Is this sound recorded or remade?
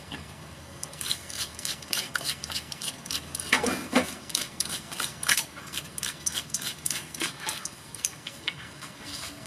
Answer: remade